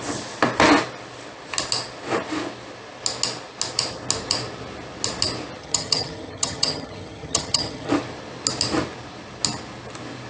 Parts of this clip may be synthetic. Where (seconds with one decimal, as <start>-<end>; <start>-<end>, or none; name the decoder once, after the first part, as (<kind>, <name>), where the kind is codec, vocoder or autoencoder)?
5.6-7.9 (vocoder, HiFi-GAN)